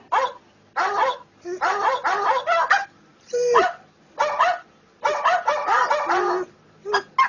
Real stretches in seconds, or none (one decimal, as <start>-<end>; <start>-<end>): 0.0-3.1; 3.7-7.3

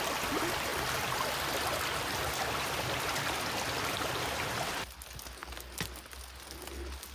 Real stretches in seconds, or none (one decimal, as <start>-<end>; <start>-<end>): 0.0-7.1

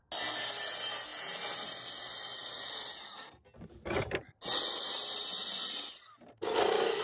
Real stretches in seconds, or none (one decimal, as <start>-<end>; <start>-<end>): 0.0-7.0

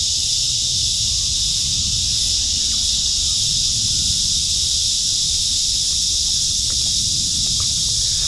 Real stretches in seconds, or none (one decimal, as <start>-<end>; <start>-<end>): 0.0-0.7; 1.3-8.3